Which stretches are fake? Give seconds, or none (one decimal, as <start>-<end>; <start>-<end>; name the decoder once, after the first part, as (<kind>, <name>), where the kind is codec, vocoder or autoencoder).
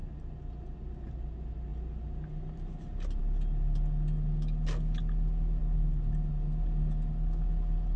none